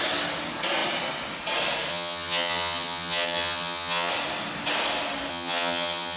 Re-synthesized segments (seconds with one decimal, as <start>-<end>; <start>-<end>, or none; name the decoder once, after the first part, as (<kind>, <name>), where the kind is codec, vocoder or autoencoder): 1.9-4.1 (vocoder, HiFi-GAN); 5.3-6.2